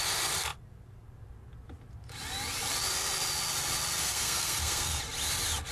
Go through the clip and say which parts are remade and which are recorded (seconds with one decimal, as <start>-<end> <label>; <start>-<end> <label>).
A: 0.0-4.0 recorded; 4.0-5.0 remade; 5.0-5.7 recorded